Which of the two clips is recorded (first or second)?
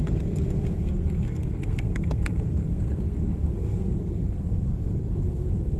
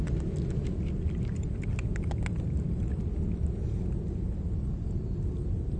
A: second